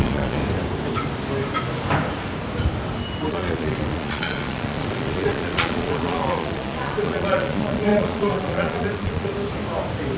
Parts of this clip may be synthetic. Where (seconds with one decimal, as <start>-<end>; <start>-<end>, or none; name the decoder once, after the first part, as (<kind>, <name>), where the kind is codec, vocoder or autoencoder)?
0.0-0.4 (vocoder, Vocos); 3.3-9.3